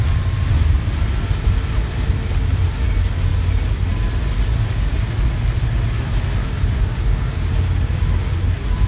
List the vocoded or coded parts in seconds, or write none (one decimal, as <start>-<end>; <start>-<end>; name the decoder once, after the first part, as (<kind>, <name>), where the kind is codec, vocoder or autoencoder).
6.4-7.5 (codec, DAC)